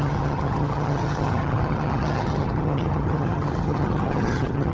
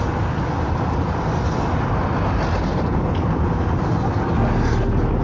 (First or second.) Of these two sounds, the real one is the second